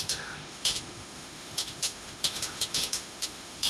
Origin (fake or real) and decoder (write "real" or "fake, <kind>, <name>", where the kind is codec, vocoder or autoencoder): fake, autoencoder, DAC-VAE